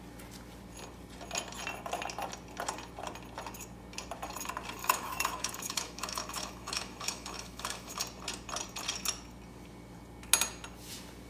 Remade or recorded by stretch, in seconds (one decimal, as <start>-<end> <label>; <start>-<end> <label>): 0.0-4.8 recorded; 4.8-8.0 remade; 8.0-11.3 recorded